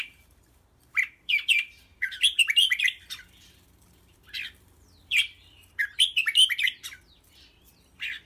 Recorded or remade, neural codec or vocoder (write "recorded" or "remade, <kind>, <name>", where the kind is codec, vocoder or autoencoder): remade, vocoder, BigVGAN v2